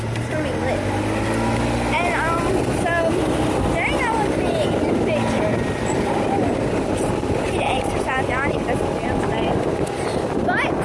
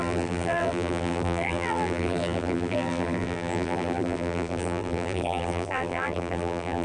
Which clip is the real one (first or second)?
first